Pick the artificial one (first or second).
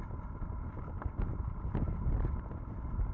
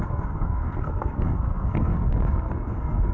second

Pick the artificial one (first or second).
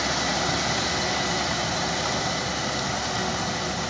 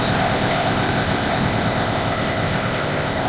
second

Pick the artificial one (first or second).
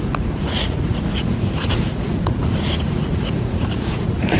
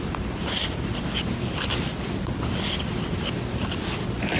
first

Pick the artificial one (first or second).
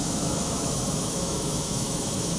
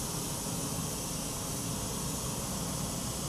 first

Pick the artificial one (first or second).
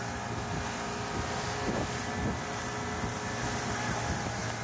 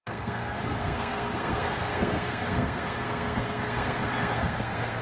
second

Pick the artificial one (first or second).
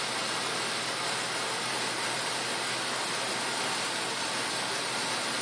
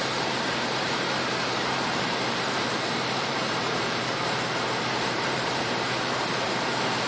second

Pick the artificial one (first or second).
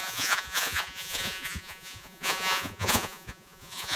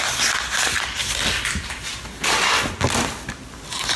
first